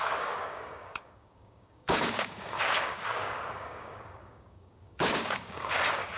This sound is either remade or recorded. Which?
remade